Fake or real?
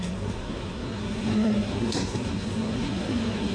fake